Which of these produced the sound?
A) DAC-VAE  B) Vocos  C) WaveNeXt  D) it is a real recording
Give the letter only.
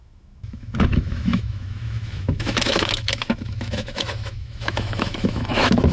A